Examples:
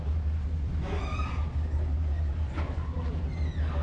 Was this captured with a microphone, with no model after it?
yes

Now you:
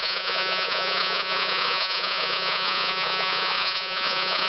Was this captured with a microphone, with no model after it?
no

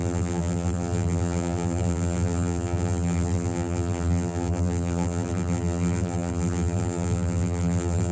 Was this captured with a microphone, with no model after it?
no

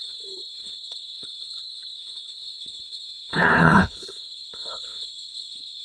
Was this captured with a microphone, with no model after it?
no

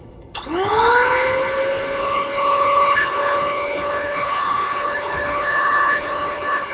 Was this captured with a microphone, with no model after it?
no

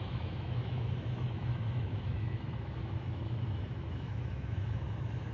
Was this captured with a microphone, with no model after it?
no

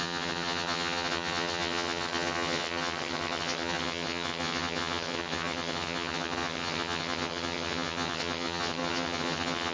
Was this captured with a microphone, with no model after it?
no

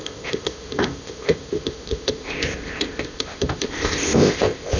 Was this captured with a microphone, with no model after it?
no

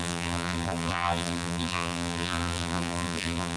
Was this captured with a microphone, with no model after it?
no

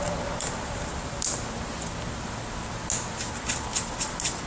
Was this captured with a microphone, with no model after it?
yes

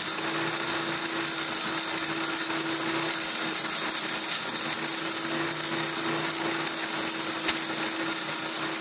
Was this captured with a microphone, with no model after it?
yes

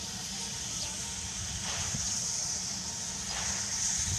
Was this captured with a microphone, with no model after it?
yes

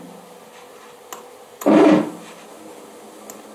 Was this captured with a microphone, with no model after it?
yes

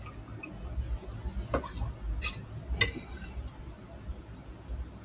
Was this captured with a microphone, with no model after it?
yes